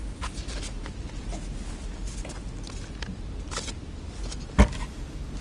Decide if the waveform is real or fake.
real